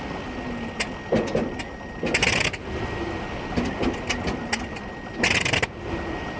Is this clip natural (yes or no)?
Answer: yes